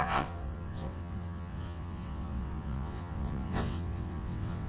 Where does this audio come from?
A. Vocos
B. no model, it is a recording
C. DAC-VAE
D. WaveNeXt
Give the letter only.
D